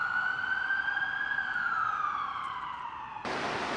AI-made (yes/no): no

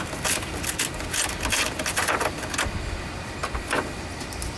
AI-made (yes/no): no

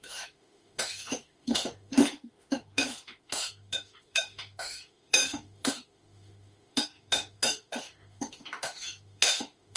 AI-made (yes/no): yes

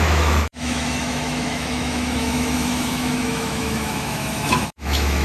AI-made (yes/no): yes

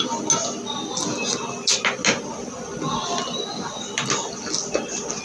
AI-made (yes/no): no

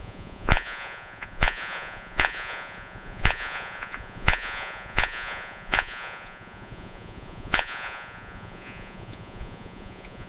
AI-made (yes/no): yes